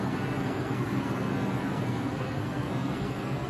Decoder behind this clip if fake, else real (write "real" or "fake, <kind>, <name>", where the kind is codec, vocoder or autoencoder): fake, codec, SNAC